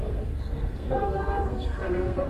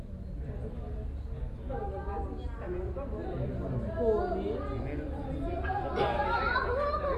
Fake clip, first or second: first